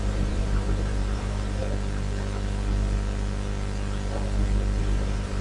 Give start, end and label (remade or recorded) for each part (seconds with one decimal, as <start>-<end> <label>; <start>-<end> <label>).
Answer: 0.0-1.6 remade; 1.6-4.8 recorded; 4.8-5.4 remade